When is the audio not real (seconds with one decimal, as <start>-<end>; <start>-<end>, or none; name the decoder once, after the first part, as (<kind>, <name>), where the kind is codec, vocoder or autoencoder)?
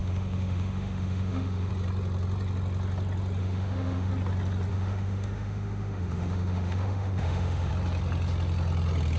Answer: 0.0-1.7 (autoencoder, DAC-VAE); 3.4-4.1; 4.7-7.7